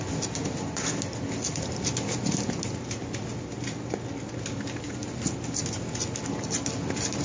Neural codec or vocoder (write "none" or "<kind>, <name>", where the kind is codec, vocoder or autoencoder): none